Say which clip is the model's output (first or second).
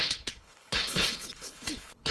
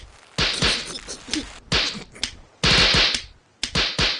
first